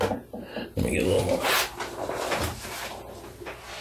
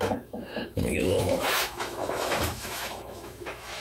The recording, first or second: first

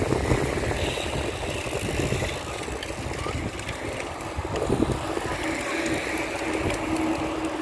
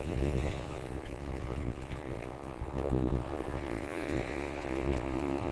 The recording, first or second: first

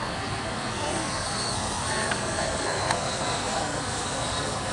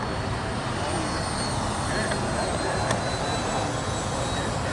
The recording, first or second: second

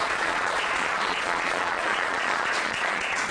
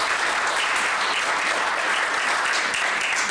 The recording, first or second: second